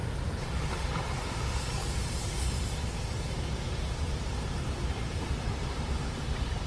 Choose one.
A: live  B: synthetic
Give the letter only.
B